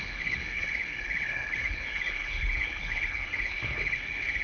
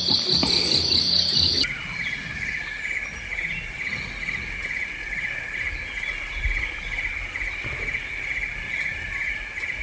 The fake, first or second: first